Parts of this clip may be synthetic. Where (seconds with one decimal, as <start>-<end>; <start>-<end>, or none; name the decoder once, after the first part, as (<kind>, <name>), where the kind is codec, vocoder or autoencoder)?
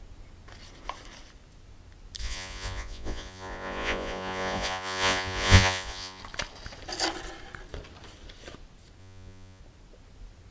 2.2-6.2 (vocoder, Vocos); 9.0-9.6